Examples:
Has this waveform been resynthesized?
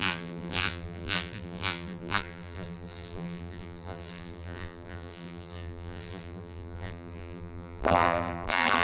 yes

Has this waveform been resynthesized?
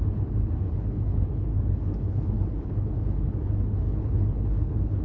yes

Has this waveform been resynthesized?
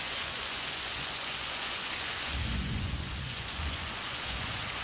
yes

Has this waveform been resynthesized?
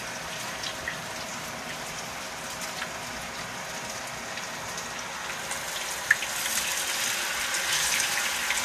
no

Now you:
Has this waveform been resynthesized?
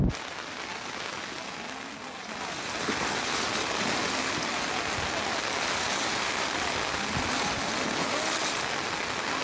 no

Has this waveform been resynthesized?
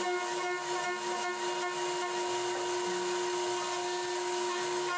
no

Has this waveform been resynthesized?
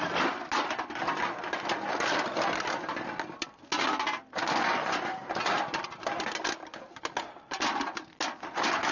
no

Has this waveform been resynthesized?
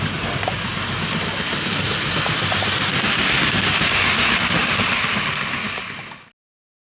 no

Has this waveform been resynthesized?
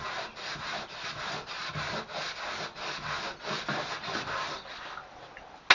no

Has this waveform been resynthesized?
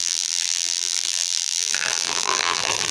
yes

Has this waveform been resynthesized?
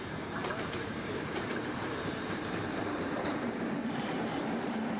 yes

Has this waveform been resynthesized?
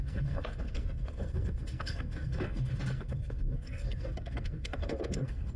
yes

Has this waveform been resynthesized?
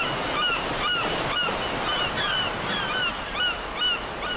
no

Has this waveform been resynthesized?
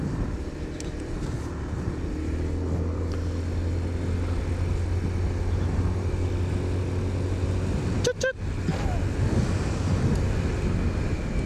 no